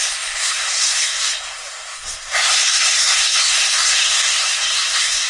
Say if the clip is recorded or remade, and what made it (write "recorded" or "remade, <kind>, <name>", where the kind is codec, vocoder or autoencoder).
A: remade, codec, SNAC